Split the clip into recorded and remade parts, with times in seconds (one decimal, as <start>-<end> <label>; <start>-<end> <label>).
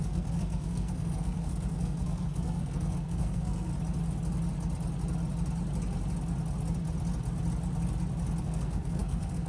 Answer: 0.0-3.7 remade; 3.7-8.4 recorded; 8.4-9.5 remade